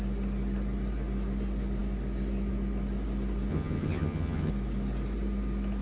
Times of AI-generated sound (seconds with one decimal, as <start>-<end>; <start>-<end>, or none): 3.5-4.5